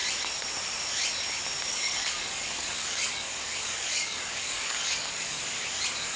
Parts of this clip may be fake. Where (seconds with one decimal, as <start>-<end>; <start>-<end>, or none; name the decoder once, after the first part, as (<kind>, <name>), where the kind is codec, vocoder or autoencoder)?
1.7-5.4 (codec, DAC)